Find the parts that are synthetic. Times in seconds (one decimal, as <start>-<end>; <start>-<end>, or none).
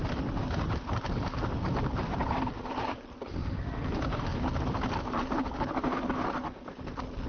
0.0-4.3; 5.0-6.4